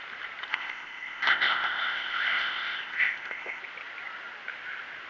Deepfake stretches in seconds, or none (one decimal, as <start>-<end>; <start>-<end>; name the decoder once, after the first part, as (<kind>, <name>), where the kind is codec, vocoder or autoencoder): 0.5-3.6 (codec, ZipCodec)